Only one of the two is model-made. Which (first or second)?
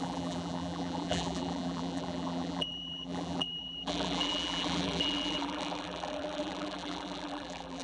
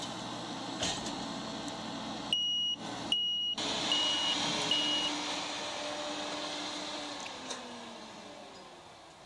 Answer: first